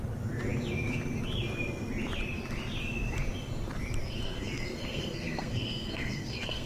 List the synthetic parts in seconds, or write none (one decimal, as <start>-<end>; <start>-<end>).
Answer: 4.0-6.7